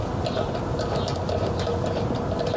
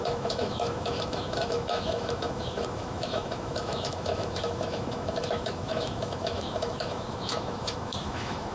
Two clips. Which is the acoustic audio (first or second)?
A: first